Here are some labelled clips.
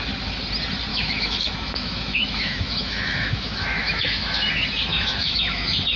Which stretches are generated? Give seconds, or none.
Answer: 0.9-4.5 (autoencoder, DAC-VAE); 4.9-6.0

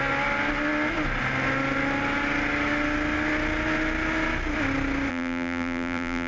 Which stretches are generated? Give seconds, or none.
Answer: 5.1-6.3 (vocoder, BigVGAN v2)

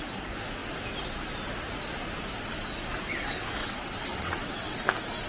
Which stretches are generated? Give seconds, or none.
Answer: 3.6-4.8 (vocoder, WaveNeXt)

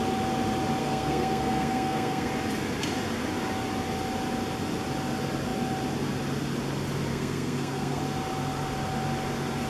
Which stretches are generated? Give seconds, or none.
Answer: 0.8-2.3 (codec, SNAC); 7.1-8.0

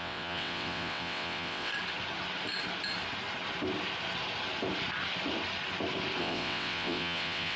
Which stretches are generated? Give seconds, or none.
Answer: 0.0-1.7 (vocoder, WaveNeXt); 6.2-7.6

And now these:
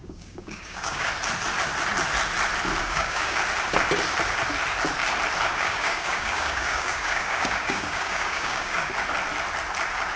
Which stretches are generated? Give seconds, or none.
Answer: 0.0-1.1 (codec, DAC); 2.8-3.4; 5.5-8.9